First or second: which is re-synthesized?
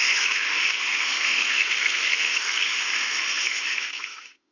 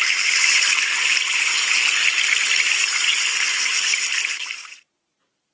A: first